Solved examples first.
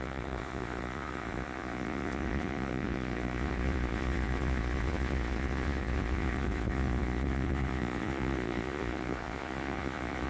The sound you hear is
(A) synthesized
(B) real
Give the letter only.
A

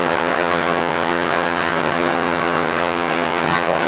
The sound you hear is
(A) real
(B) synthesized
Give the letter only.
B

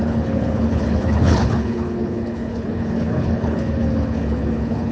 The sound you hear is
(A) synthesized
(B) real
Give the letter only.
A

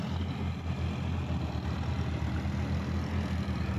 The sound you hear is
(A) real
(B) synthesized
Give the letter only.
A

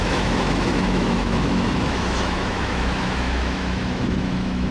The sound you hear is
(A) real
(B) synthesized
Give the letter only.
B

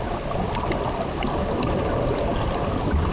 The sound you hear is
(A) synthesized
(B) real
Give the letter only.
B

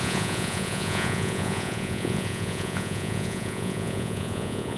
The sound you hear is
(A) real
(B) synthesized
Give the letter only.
B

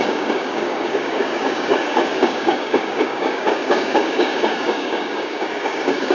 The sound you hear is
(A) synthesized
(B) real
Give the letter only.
A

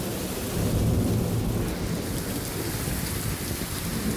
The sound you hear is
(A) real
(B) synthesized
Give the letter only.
A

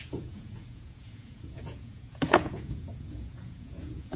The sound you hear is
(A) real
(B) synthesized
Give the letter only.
B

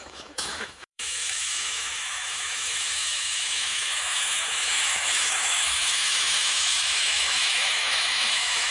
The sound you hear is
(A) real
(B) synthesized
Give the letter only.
B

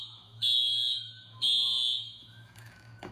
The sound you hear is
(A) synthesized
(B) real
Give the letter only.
A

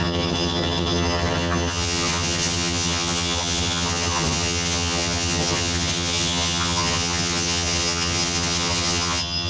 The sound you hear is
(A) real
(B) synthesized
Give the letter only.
B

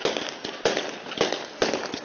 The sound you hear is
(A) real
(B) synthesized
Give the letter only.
A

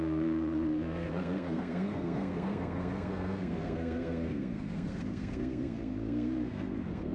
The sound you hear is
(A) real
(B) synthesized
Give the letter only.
B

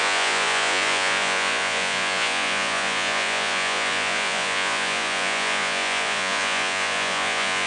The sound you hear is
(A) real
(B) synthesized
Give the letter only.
B